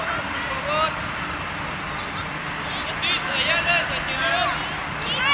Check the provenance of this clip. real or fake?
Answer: real